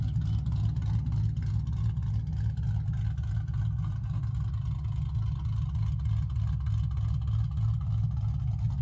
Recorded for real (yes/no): yes